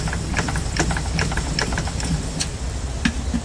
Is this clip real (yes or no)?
yes